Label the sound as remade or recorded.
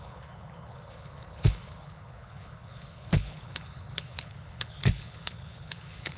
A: remade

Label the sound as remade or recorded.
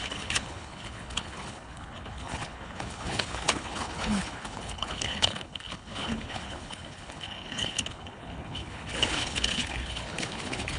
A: remade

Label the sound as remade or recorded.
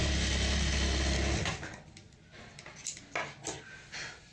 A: recorded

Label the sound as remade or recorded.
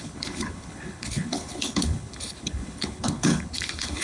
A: remade